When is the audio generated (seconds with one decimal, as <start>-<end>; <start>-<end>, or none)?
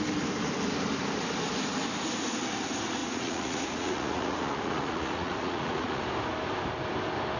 3.0-6.0